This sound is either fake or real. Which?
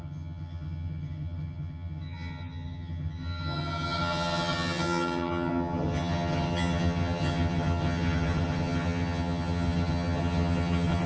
fake